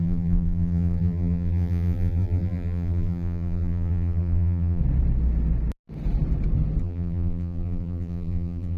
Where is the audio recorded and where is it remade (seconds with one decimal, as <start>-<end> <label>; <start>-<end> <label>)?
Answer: 0.0-4.8 remade; 4.8-6.8 recorded; 6.8-8.8 remade